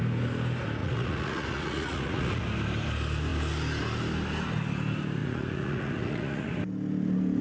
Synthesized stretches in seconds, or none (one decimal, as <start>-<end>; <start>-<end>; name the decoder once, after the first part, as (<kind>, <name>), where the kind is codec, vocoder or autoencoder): 0.8-2.4 (vocoder, Vocos); 5.2-6.5